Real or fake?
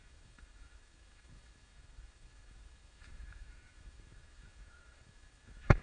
fake